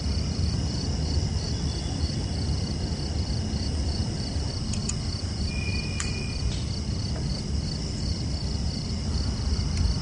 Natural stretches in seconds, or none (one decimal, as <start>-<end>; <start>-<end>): none